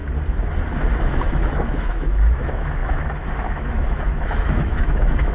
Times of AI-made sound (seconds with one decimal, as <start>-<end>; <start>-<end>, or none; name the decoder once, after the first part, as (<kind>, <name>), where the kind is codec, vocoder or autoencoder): 1.0-5.3 (autoencoder, DAC-VAE)